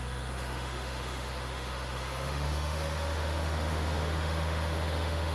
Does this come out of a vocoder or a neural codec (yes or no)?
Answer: yes